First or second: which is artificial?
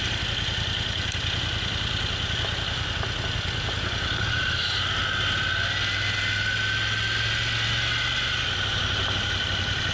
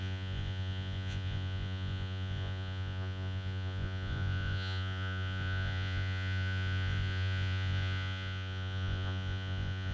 second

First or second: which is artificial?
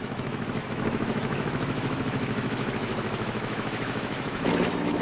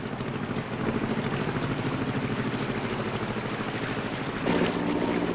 first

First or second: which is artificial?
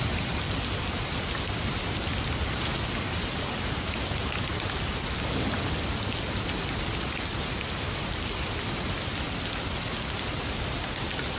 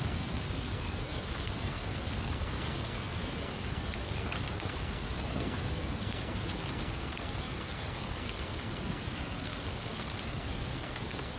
second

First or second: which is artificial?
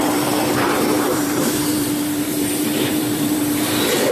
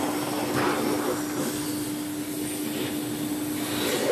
first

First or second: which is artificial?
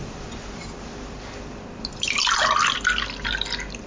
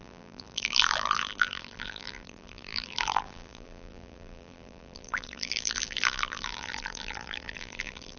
second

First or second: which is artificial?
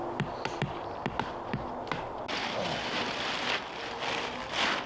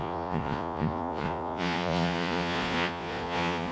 second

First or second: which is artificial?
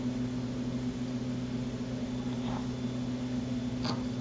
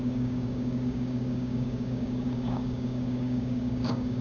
second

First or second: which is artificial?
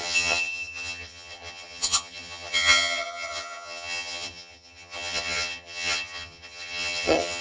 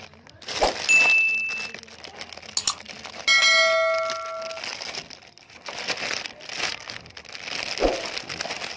first